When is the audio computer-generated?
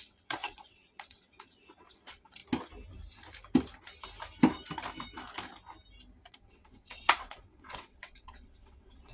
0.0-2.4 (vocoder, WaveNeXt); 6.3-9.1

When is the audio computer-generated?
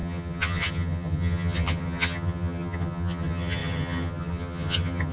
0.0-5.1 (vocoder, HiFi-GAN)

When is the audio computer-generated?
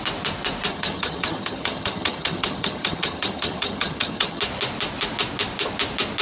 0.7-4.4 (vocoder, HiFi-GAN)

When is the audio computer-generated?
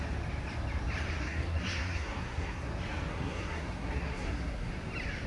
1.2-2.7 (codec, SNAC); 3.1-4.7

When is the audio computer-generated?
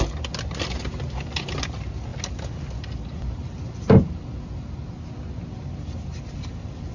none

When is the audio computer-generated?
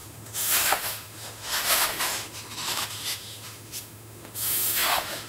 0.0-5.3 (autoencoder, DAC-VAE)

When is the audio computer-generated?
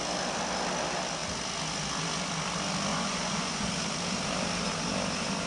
2.9-3.7 (vocoder, Vocos)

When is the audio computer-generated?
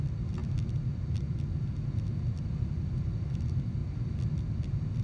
none